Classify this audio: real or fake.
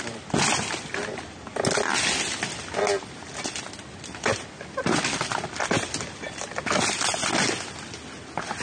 real